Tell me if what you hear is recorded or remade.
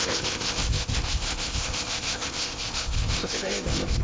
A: remade